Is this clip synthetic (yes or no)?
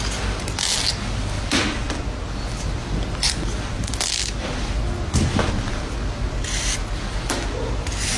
no